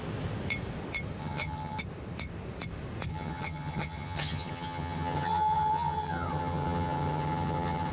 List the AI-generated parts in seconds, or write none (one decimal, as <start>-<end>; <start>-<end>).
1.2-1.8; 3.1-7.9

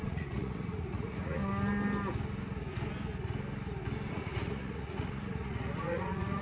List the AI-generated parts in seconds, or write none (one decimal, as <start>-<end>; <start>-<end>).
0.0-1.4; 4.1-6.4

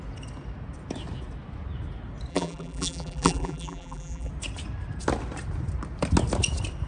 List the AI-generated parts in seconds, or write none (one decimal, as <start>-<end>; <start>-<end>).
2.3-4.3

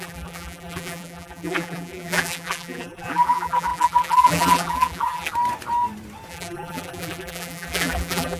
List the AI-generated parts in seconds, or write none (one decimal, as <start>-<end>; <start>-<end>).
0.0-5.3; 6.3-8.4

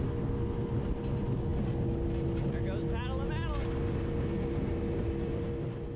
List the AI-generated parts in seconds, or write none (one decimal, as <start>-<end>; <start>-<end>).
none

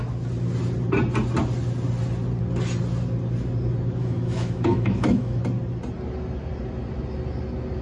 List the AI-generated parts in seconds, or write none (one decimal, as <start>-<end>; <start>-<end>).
4.0-5.4